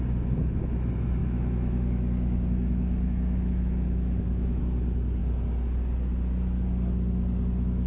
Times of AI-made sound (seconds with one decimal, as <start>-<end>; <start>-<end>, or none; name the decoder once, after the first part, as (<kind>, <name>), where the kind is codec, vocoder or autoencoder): 1.2-4.6 (autoencoder, DAC-VAE)